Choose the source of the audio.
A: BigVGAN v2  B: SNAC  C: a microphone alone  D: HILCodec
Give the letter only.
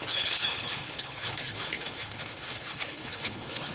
D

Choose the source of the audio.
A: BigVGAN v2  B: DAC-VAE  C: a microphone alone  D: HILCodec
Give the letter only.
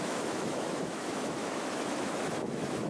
B